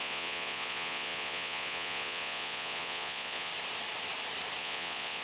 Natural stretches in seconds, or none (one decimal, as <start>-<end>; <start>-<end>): 3.5-4.6